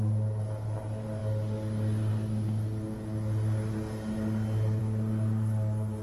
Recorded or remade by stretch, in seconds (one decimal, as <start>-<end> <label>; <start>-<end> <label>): 0.0-6.0 recorded